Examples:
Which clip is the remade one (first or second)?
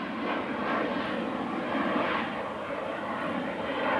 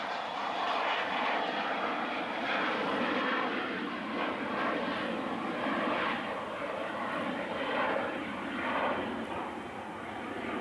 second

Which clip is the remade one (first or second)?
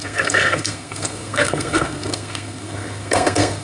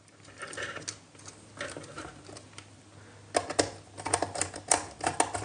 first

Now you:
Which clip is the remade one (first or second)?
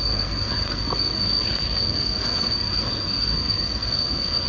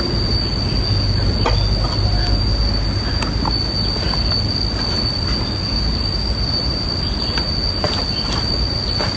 first